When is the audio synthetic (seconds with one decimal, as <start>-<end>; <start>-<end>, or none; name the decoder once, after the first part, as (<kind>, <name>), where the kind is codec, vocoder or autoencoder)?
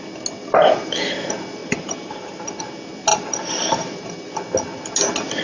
0.4-1.0 (vocoder, BigVGAN v2); 1.6-2.6; 3.1-4.3